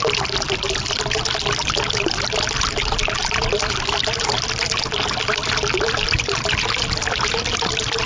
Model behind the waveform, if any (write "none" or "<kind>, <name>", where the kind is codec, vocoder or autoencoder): none